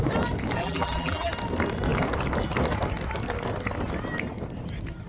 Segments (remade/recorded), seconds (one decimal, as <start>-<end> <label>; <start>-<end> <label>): 0.0-0.6 recorded; 0.6-1.3 remade; 1.3-5.1 recorded